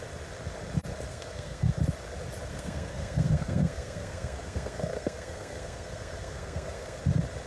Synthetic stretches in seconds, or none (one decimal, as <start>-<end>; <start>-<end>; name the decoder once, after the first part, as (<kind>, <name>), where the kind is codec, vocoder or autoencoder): 1.1-1.8 (codec, SNAC); 2.5-7.0